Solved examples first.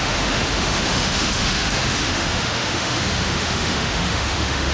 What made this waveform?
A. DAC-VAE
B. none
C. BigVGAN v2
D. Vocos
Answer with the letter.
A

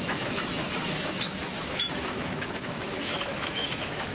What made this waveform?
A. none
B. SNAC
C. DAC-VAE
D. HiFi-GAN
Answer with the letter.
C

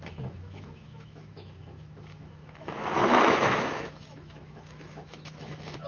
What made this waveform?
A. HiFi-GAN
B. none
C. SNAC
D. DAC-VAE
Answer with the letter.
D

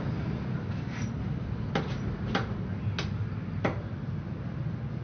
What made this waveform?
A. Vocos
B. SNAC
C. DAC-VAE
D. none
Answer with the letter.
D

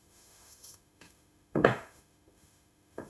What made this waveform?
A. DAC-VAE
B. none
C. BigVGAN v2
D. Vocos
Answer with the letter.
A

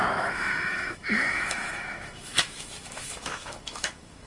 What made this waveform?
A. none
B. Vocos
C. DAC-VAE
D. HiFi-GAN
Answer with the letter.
C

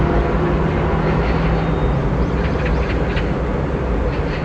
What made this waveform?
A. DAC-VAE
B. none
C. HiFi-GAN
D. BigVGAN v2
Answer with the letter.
B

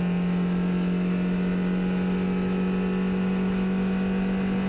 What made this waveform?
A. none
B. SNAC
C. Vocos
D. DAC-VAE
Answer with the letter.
A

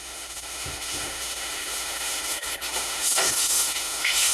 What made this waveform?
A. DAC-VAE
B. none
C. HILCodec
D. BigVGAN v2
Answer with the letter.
A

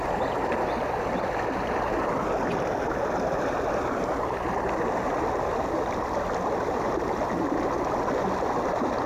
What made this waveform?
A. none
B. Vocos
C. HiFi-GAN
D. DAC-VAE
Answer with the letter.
A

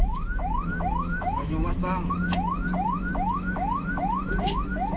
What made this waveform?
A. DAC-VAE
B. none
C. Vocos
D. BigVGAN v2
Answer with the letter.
A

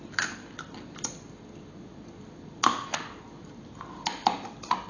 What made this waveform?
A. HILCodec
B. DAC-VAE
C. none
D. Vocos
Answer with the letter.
C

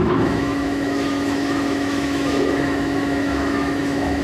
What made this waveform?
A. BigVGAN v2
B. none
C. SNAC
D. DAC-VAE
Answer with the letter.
D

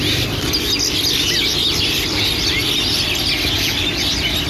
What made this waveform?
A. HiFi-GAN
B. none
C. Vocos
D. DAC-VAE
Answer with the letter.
B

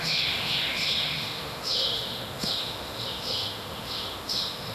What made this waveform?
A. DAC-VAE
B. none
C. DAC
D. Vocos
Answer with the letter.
A